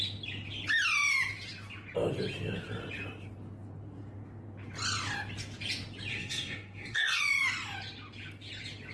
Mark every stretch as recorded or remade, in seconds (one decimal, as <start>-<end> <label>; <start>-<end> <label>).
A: 0.0-6.1 recorded; 6.1-7.2 remade; 7.2-8.9 recorded